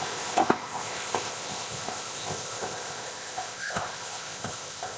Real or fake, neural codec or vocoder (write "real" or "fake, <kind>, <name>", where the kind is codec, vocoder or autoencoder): fake, codec, ZipCodec